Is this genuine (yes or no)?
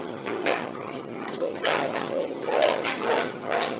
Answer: no